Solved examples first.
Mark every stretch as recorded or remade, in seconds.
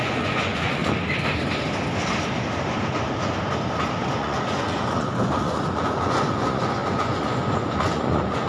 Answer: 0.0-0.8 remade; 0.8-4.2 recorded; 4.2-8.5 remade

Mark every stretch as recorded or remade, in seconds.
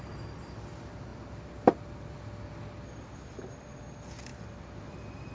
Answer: 0.0-4.3 recorded; 4.3-4.8 remade; 4.8-5.3 recorded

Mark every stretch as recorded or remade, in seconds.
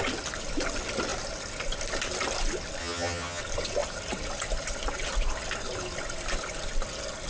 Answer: 0.0-2.8 recorded; 2.8-3.4 remade; 3.4-7.3 recorded